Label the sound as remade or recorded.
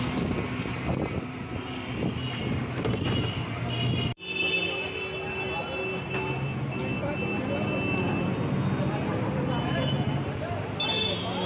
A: recorded